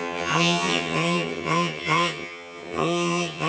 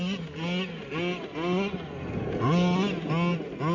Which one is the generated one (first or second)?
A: first